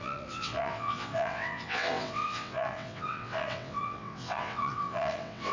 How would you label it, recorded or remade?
remade